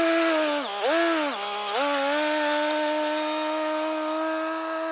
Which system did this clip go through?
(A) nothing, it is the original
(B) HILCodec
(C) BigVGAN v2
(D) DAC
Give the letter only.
A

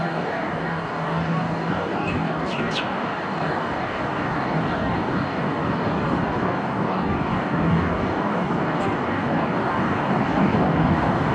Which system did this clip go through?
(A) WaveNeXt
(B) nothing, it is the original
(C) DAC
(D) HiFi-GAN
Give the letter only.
C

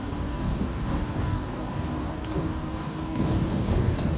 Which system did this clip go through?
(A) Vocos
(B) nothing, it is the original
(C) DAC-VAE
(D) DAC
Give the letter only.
D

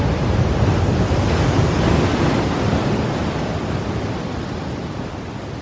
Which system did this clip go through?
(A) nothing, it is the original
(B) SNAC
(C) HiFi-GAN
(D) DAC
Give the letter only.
A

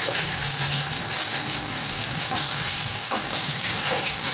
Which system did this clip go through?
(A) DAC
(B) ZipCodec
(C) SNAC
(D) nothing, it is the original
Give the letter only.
A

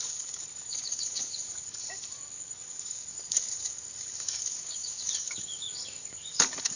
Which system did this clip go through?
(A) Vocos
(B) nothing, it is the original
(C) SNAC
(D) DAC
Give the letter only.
D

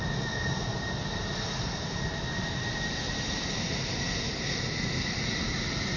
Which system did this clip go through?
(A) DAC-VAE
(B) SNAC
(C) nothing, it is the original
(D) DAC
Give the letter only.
C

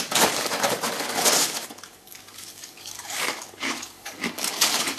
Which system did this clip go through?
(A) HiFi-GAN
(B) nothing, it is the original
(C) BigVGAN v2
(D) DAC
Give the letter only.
D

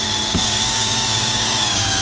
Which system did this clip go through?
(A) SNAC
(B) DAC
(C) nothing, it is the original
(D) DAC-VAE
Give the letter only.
B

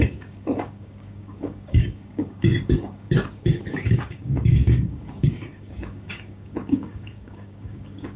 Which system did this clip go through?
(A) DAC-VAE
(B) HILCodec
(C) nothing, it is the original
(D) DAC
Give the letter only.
D